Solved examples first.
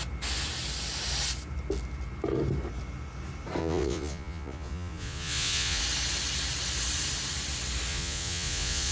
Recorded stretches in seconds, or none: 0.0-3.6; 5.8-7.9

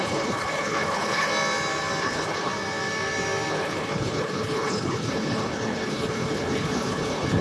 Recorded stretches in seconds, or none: 1.3-2.0; 2.5-3.5

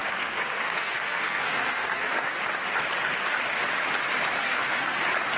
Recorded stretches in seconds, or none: 2.4-4.4; 5.0-5.4

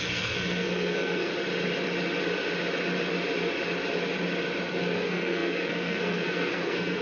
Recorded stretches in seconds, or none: 1.3-4.7

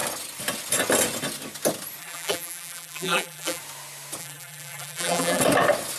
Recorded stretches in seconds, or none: 0.0-2.0; 3.6-4.2; 5.4-6.0

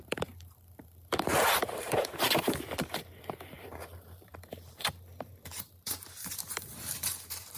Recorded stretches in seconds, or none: none